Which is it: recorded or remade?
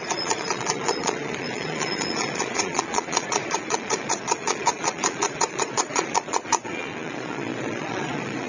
remade